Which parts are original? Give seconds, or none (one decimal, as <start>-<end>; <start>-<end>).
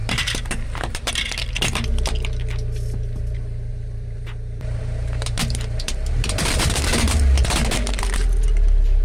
1.1-3.7; 7.9-9.0